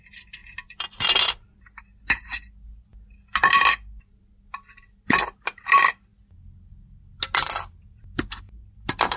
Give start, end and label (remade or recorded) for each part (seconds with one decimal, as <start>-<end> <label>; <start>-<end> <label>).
0.0-9.2 recorded